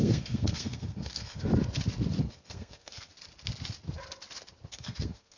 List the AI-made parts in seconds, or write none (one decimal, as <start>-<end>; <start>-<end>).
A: 0.0-1.5; 2.2-3.1; 4.7-5.4